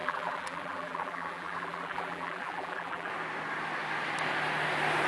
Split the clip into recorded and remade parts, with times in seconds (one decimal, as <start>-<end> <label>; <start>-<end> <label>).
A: 0.0-3.1 remade; 3.1-5.1 recorded